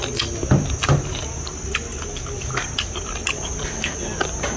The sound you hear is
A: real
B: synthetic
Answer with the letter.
A